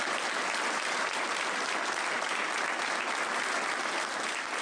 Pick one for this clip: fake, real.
real